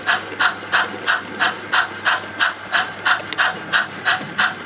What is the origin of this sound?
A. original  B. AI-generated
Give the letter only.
A